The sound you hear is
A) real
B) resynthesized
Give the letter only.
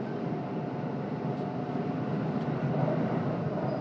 A